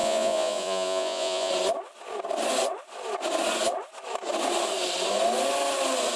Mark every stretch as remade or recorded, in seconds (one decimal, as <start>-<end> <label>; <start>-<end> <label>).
0.0-1.5 remade; 1.5-6.2 recorded